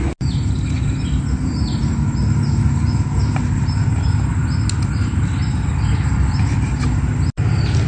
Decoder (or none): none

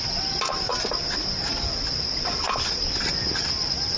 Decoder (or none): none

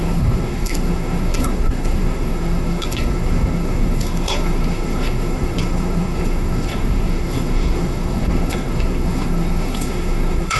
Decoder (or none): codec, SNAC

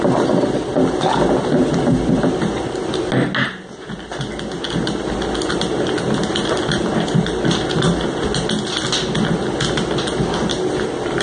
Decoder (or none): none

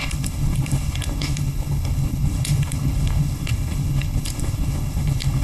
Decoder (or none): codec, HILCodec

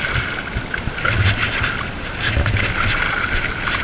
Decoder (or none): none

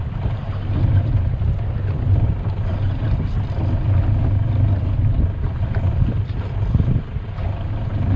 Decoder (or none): none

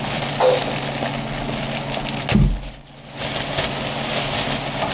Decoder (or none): none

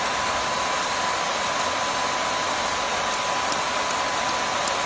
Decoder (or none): none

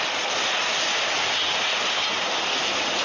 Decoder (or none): none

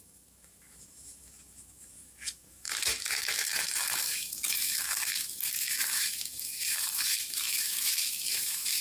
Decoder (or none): autoencoder, DAC-VAE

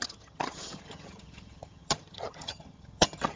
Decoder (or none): vocoder, HiFi-GAN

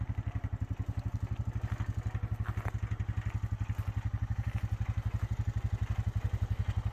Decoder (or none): none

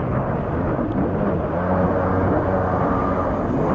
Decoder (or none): none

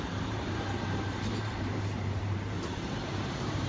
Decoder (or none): vocoder, BigVGAN v2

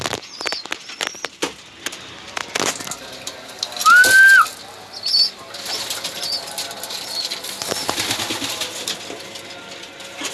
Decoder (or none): none